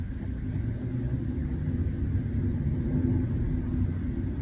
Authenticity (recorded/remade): recorded